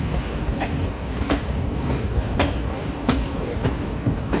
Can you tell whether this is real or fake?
fake